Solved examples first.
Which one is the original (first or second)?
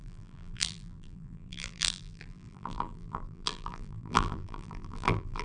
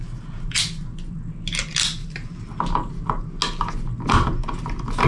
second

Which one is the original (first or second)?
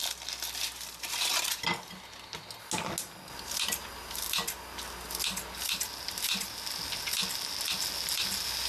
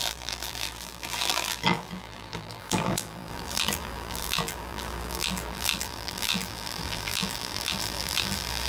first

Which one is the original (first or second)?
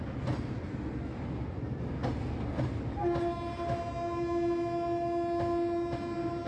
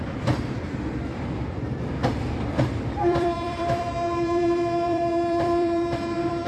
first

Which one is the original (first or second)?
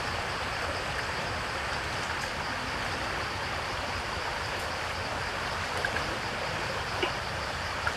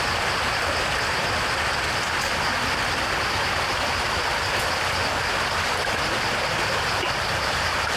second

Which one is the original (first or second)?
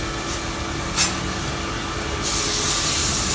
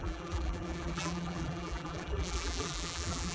first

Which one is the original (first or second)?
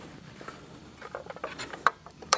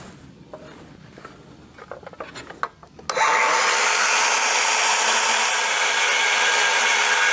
second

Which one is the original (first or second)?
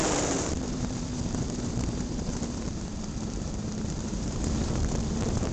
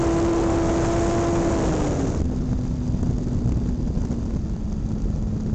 second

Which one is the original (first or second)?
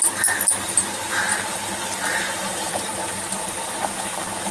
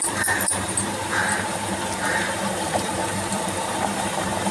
first